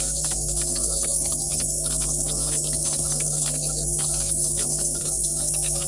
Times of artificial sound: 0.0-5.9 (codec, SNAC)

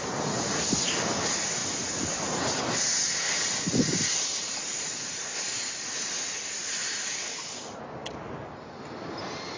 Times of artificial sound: 4.3-5.3 (vocoder, BigVGAN v2)

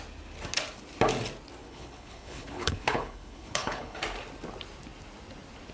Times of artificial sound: 1.6-4.0 (codec, HILCodec)

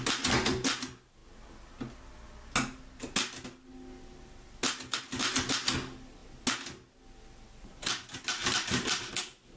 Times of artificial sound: 8.4-9.1 (vocoder, BigVGAN v2)